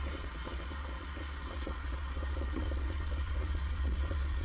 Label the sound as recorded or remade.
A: remade